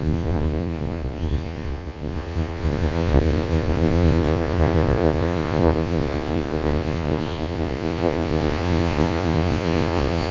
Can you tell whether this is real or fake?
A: fake